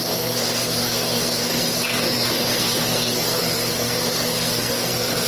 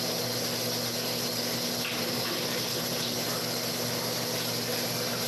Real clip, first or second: second